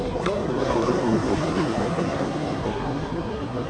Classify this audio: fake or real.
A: fake